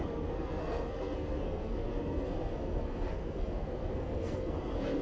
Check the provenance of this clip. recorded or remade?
remade